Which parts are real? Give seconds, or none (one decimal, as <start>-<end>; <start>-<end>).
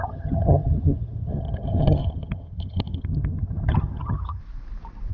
4.4-5.1